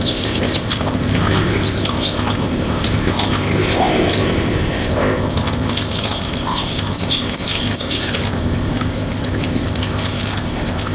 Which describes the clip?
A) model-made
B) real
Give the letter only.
A